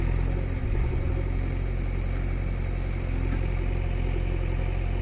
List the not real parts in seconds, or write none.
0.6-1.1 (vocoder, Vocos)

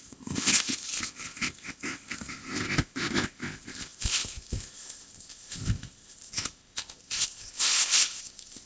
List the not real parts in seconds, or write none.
0.0-8.7 (codec, ZipCodec)

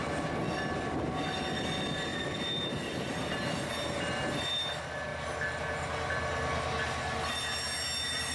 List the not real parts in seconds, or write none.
none

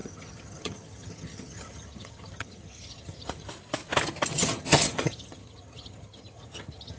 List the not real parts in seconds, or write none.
0.0-3.5 (vocoder, HiFi-GAN); 4.3-7.0

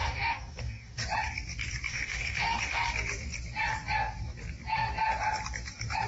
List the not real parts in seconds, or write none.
0.0-1.0 (codec, DAC); 1.9-2.9

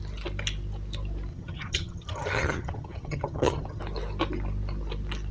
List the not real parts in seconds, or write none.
1.3-3.8 (vocoder, HiFi-GAN)